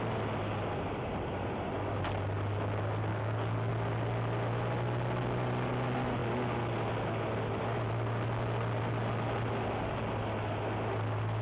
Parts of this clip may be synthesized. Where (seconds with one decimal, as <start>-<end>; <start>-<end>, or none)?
3.1-3.7

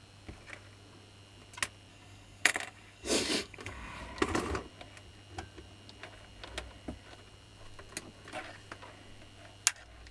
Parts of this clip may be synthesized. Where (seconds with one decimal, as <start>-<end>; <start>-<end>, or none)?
1.9-4.0

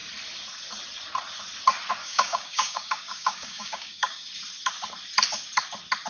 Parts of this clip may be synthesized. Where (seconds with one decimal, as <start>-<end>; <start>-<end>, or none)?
2.0-4.3

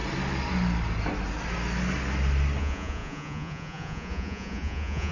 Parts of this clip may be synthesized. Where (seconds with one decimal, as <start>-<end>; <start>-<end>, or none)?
2.6-5.1